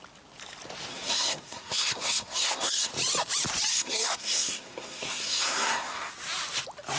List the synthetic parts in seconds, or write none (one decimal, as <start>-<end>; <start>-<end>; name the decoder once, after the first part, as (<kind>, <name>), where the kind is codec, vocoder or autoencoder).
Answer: 0.9-2.9 (codec, SNAC); 3.7-6.1